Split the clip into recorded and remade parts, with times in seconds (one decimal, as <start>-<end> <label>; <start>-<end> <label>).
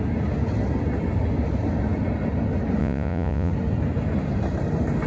0.0-2.8 recorded; 2.8-3.5 remade; 3.5-5.1 recorded